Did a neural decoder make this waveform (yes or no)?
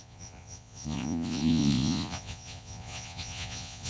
yes